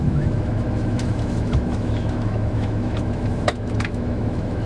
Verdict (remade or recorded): remade